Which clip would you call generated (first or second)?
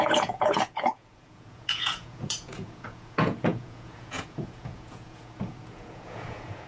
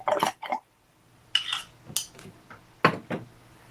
first